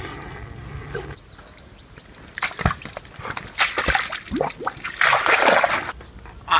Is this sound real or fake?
real